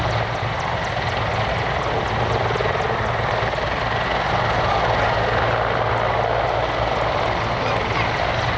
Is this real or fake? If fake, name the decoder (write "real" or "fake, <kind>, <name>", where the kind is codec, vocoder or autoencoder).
real